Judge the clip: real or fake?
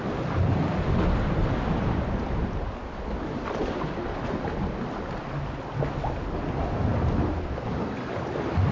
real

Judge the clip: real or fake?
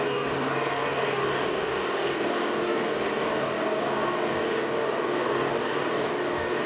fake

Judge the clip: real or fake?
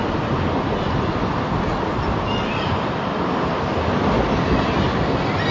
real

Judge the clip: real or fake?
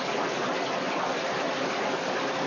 real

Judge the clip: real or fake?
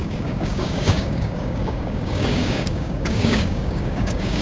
fake